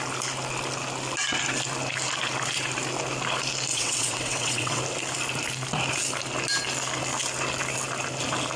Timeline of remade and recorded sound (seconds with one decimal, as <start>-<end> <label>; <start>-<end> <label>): 0.0-3.7 recorded; 3.7-4.8 remade; 4.8-8.6 recorded